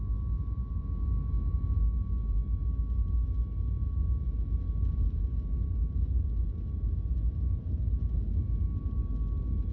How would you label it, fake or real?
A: real